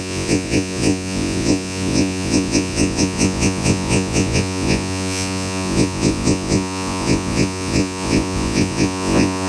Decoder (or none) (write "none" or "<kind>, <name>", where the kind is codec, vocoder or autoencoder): vocoder, Vocos